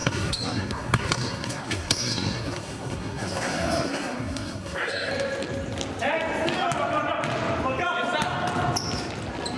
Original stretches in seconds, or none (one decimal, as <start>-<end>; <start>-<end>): 5.1-9.6